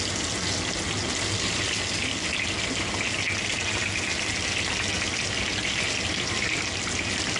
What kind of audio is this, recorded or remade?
recorded